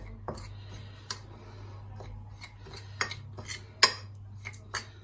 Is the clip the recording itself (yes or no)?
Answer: yes